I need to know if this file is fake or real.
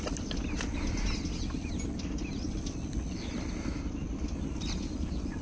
real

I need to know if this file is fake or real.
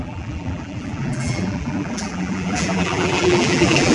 fake